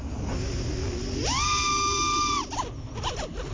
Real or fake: real